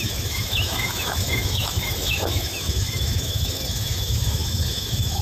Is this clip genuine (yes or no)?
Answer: no